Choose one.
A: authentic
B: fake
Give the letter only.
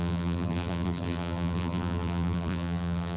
B